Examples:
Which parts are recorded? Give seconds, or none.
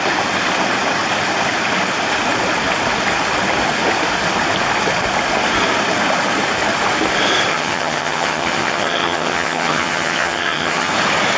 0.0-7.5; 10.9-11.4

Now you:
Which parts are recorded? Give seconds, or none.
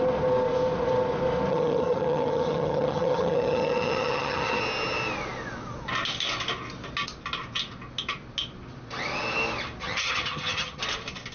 0.0-1.5; 4.6-9.8; 10.8-11.3